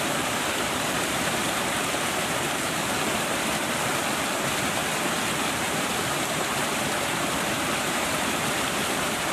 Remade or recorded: remade